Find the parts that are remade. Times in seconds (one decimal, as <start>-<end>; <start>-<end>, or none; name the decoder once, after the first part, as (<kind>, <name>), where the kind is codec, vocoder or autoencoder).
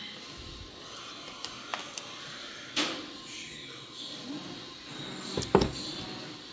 none